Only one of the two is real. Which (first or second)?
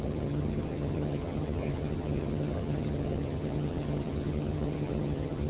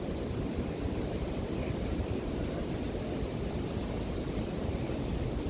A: second